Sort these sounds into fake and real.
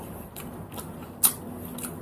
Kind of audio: real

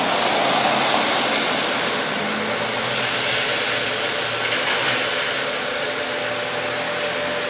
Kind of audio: real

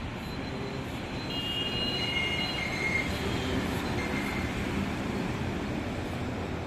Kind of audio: fake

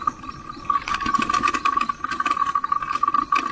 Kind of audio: real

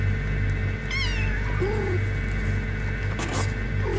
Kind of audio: real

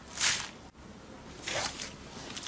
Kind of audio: real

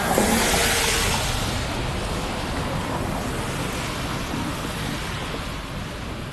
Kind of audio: real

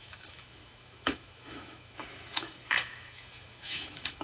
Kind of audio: fake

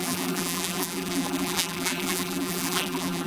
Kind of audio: fake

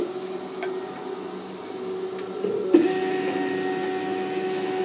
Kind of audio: real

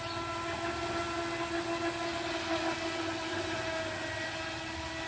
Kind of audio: real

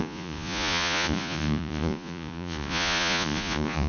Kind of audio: fake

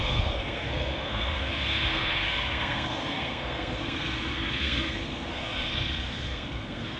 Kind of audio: fake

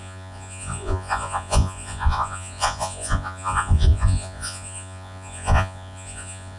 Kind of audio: fake